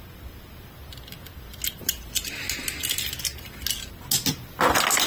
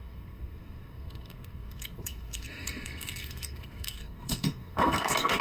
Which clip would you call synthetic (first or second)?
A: second